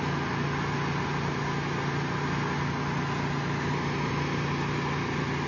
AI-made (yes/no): no